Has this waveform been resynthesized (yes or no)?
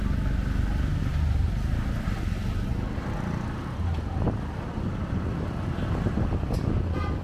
no